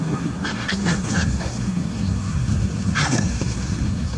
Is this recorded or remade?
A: remade